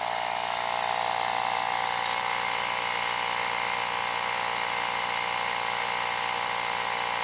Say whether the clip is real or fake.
real